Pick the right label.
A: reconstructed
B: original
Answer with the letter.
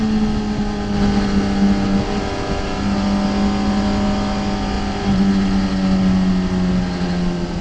B